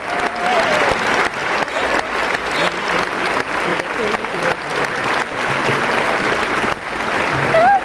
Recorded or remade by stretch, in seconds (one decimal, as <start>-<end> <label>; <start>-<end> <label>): 0.0-3.7 recorded; 3.7-5.5 remade; 5.5-7.8 recorded